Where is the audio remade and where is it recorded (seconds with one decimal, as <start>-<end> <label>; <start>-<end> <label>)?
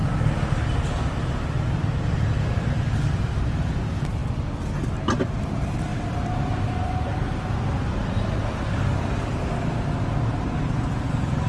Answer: 0.0-11.5 recorded